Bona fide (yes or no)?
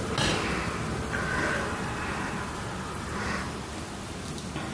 yes